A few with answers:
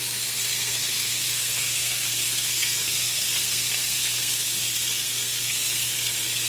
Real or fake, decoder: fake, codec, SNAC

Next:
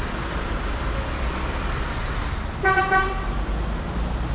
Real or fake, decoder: real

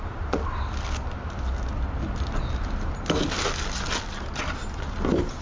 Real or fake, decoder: real